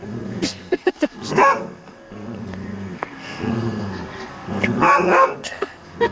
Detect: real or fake fake